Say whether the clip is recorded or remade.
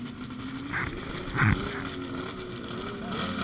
recorded